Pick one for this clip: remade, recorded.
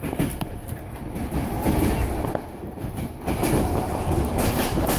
recorded